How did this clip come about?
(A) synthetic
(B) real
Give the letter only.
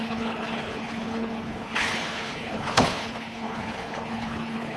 A